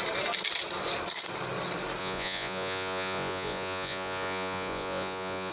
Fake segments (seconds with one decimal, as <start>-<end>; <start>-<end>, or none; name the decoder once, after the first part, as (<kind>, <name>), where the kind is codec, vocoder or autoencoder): 2.0-5.5 (vocoder, Vocos)